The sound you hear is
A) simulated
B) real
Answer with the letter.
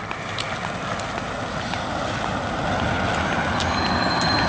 B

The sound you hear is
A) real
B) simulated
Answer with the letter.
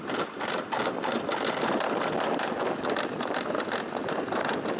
A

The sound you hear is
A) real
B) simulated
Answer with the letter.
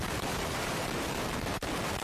B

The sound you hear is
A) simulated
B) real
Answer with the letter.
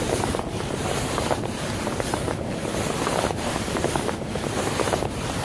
A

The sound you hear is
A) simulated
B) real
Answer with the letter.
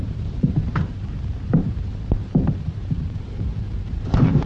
A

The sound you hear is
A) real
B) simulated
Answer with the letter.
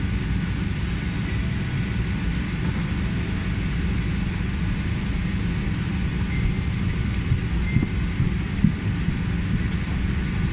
A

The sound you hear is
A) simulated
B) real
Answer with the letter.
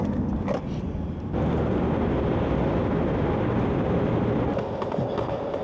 B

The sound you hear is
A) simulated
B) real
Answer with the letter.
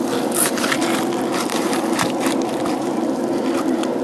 A